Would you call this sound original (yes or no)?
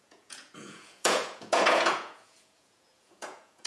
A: no